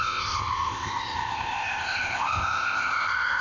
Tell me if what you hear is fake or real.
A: fake